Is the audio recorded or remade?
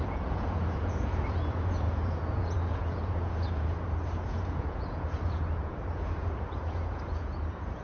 remade